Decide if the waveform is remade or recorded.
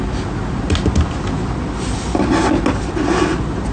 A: recorded